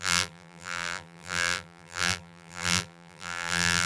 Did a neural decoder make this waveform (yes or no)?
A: yes